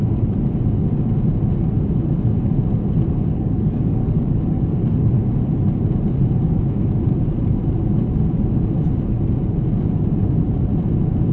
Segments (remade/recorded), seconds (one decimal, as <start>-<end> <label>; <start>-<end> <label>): 0.0-3.3 recorded; 3.3-4.6 remade; 4.6-11.3 recorded